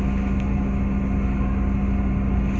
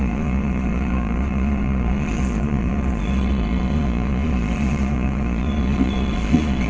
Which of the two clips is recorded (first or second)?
first